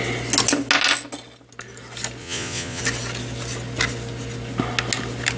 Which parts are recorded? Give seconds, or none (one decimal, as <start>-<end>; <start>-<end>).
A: 0.0-2.2; 2.8-5.4